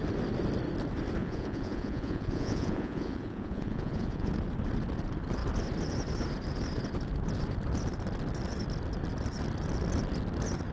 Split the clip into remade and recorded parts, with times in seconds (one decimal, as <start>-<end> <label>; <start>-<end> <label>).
0.0-1.2 recorded; 1.2-4.3 remade; 4.3-10.7 recorded